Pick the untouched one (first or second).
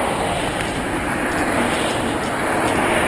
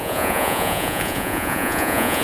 first